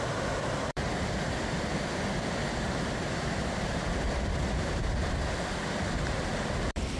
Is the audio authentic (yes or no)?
no